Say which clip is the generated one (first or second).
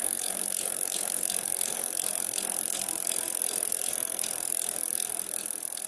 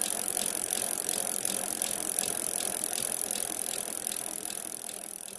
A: first